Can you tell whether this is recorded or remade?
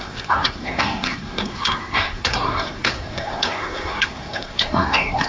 remade